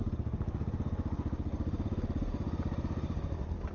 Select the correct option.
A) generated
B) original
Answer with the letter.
B